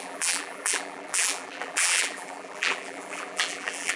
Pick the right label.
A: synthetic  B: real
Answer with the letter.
A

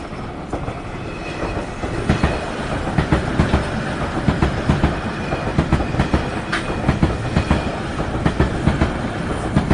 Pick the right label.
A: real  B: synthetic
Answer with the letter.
A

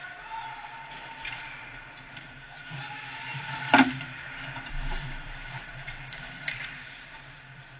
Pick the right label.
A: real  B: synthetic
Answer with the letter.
B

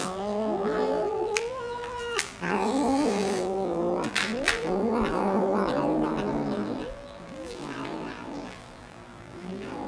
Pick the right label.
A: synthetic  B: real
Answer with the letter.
A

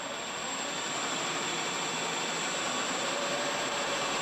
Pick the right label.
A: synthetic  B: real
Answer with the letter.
A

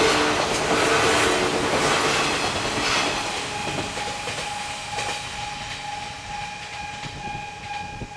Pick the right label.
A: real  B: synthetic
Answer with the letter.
A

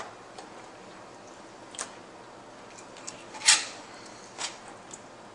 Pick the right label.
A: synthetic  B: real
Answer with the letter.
A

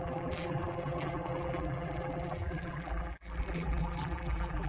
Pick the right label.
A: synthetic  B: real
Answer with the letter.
A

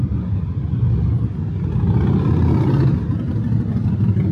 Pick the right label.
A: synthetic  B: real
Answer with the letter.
B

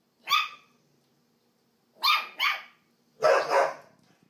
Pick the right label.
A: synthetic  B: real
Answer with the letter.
B